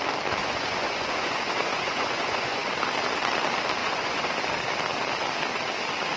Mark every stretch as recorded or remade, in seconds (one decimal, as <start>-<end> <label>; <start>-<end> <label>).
0.0-0.4 recorded; 0.4-2.7 remade; 2.7-3.8 recorded; 3.8-4.3 remade; 4.3-6.2 recorded